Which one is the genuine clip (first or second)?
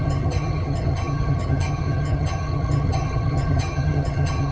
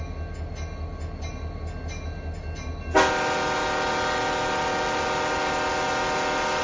second